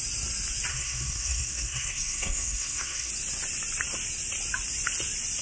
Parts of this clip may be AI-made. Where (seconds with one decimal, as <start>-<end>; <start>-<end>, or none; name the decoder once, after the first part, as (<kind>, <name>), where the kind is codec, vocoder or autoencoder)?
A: 0.7-3.1 (codec, SNAC)